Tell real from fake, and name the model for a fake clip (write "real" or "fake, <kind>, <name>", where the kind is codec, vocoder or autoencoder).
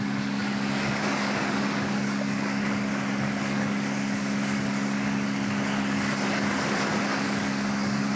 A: fake, codec, DAC